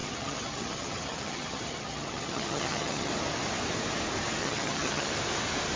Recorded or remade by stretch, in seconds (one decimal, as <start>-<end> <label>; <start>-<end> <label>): 0.0-3.1 remade; 3.1-4.4 recorded; 4.4-5.1 remade; 5.1-5.8 recorded